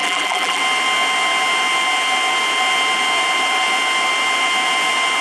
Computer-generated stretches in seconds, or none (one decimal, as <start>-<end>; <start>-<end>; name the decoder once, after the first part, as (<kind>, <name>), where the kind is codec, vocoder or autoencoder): 0.0-0.6 (vocoder, BigVGAN v2)